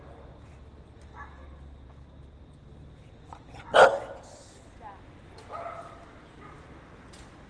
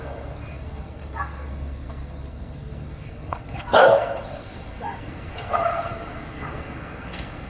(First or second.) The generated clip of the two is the second